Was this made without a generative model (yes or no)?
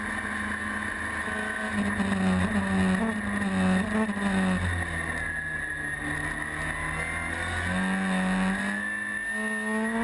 yes